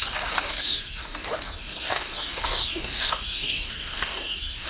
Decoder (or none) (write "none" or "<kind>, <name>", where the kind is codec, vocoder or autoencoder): codec, DAC